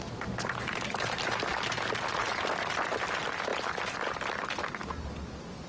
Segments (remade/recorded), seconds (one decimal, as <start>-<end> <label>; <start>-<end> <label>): 0.0-5.7 recorded